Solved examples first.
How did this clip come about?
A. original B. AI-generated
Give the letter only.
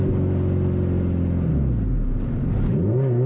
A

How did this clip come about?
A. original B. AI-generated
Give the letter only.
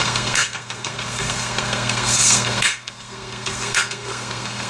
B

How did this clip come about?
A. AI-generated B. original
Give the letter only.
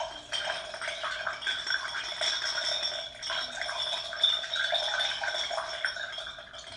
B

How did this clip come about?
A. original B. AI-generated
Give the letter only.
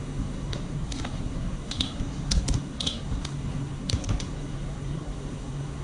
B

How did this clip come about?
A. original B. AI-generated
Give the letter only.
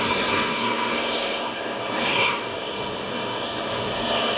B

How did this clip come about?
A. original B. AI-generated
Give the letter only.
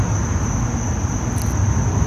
A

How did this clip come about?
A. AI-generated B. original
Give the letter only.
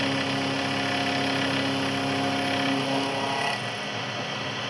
B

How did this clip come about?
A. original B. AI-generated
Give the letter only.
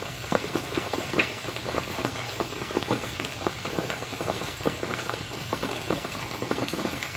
B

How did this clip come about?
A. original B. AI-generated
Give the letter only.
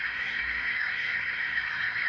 B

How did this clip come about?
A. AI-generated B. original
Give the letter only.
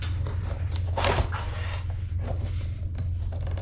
B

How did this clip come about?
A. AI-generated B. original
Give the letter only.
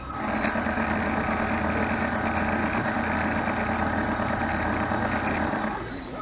B